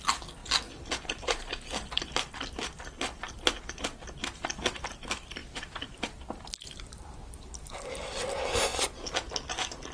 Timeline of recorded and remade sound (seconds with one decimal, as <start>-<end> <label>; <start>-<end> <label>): 0.0-5.4 recorded; 5.4-7.7 remade; 7.7-9.9 recorded